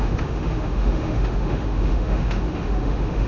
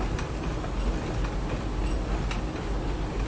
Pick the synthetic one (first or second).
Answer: first